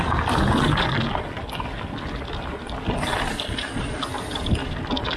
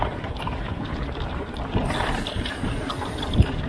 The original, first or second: first